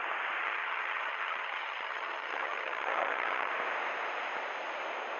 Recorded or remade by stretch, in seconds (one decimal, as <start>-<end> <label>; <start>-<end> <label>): 0.0-0.4 recorded; 0.4-3.5 remade; 3.5-5.2 recorded